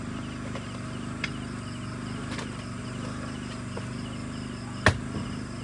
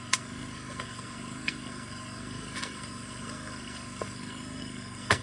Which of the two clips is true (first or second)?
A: first